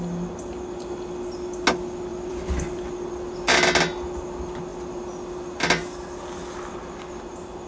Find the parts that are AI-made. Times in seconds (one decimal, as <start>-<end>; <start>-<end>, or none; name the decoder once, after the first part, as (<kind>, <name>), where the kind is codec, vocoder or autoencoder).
2.1-3.1 (vocoder, BigVGAN v2)